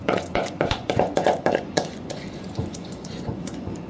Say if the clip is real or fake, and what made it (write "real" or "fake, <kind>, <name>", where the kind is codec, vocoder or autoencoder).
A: fake, vocoder, Vocos